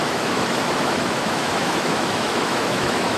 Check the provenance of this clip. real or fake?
fake